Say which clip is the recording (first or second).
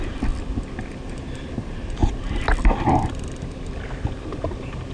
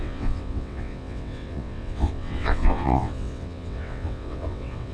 first